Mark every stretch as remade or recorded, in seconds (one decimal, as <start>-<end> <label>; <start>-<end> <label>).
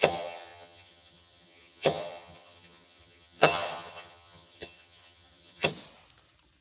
0.0-5.7 remade; 5.7-6.6 recorded